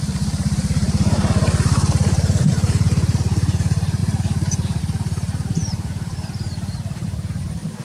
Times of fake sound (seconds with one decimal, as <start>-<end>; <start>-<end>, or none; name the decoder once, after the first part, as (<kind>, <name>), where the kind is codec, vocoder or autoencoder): 0.0-7.8 (vocoder, BigVGAN v2)